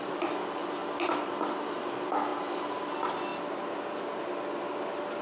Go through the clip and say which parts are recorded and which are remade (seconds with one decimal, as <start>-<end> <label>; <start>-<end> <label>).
0.0-2.3 recorded; 2.3-2.9 remade; 2.9-3.3 recorded; 3.3-4.0 remade; 4.0-5.2 recorded